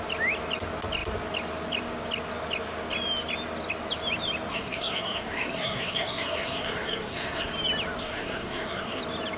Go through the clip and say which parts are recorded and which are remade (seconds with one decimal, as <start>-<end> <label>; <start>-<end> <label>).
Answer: 0.0-4.5 recorded; 4.5-7.5 remade; 7.5-8.0 recorded; 8.0-9.0 remade; 9.0-9.4 recorded